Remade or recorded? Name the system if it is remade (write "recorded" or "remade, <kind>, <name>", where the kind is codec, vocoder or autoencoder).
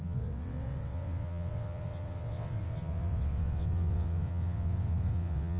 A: remade, vocoder, WaveNeXt